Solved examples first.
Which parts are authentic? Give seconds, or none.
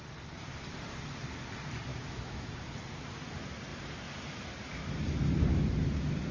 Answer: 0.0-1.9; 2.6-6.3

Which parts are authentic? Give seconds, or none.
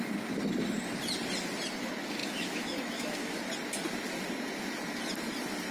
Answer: 0.0-2.2; 3.4-5.7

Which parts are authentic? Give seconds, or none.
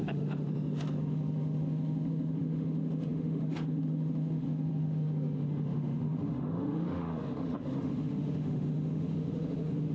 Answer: none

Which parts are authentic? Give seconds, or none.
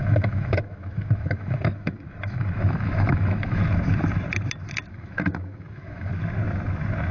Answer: 3.6-4.9; 6.1-7.1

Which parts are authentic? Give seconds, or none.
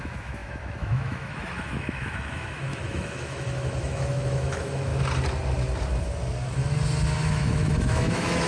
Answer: 4.9-7.3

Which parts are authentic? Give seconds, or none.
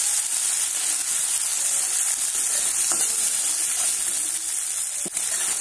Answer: 0.0-5.6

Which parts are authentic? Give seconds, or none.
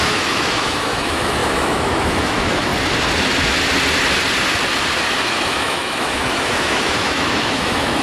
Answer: 2.7-5.2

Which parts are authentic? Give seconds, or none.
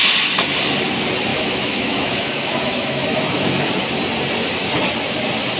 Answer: 0.0-1.3; 3.7-5.6